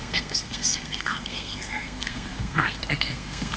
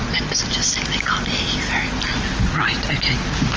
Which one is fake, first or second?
first